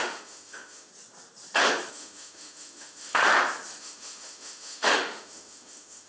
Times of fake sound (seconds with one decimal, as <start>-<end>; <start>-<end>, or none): 0.0-0.9; 1.9-3.2; 3.8-6.1

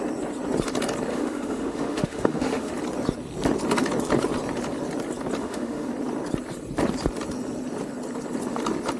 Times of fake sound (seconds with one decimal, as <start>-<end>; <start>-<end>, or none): 1.1-2.7; 5.4-5.9

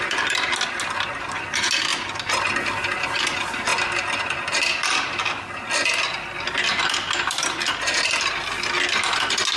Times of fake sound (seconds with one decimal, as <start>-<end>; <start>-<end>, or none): none

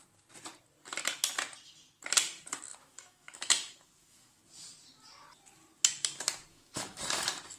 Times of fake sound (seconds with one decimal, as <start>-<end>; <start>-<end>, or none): 2.7-4.4; 6.5-7.0